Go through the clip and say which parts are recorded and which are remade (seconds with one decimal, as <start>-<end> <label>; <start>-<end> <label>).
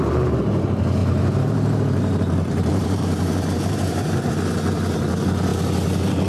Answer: 0.0-1.0 recorded; 1.0-4.3 remade; 4.3-6.3 recorded